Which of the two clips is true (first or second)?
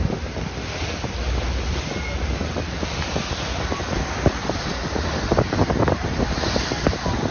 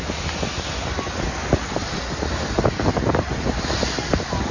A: second